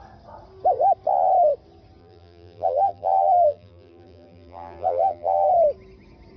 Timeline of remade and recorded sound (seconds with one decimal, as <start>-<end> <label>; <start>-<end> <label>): 0.0-2.0 recorded; 2.0-5.5 remade; 5.5-6.4 recorded